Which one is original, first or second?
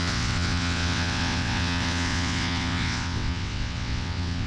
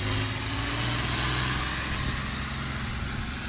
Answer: second